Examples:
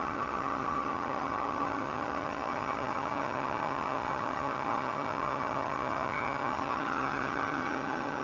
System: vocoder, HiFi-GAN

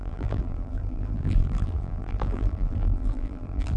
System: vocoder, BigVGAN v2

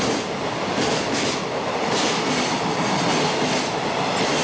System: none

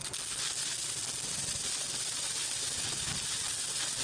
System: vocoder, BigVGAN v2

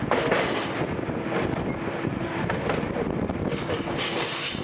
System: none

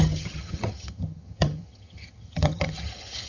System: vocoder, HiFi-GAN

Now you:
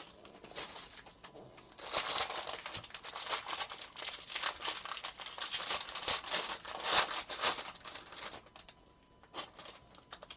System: none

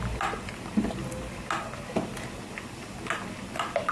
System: none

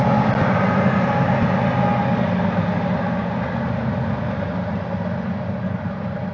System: none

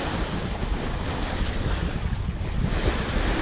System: none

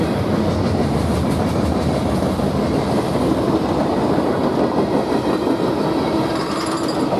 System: none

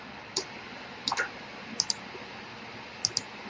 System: none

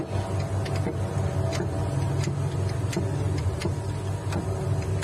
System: none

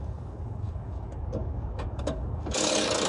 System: codec, DAC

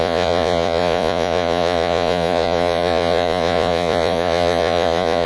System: vocoder, Vocos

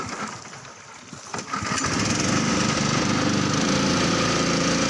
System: none